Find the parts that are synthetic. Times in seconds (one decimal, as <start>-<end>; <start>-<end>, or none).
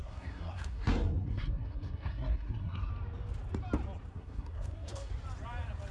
0.0-2.9; 4.1-5.1